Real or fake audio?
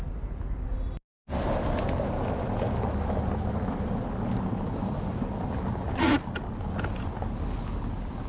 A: real